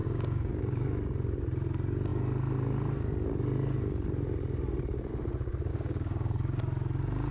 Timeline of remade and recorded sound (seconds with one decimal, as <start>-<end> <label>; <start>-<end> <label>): 0.0-0.8 remade; 0.8-5.7 recorded; 5.7-6.6 remade; 6.6-7.3 recorded